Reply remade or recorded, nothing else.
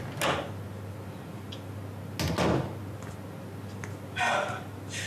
recorded